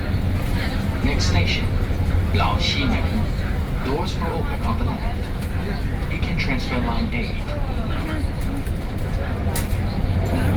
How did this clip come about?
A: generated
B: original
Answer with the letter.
B